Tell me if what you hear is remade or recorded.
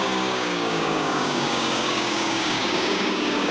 remade